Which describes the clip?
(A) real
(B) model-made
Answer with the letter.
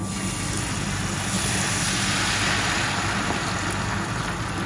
A